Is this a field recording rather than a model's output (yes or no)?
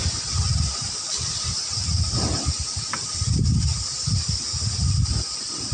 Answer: yes